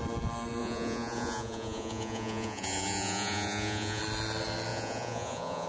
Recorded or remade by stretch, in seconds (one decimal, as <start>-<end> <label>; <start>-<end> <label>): 0.0-0.6 recorded; 0.6-4.0 remade; 4.0-4.7 recorded; 4.7-5.7 remade